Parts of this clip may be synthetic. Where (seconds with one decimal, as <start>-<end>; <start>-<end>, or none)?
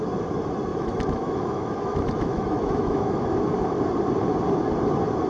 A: 0.7-3.3